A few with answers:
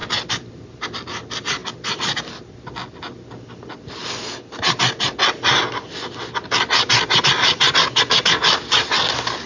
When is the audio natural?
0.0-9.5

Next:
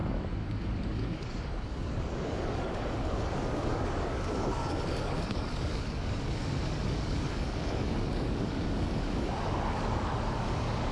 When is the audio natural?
none